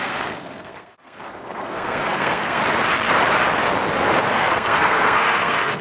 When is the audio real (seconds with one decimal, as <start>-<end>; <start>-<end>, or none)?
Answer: 2.6-4.3